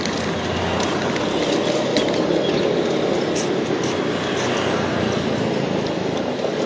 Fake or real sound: real